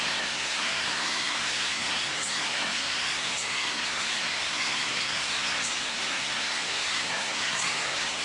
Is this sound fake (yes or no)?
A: yes